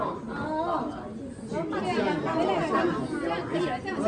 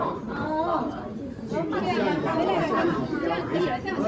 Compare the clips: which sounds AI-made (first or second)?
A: second